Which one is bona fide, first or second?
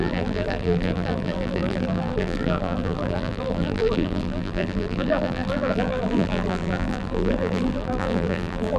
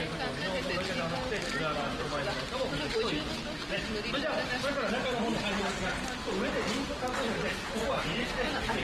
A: second